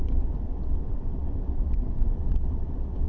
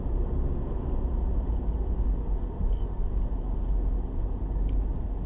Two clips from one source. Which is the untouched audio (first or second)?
second